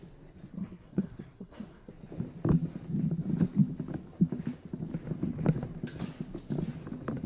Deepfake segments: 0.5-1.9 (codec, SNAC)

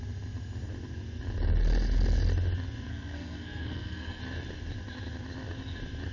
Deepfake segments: 2.9-4.2 (codec, SNAC)